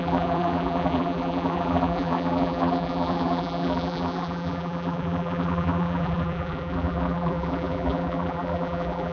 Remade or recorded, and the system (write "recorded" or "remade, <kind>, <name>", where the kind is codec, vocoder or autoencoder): remade, vocoder, BigVGAN v2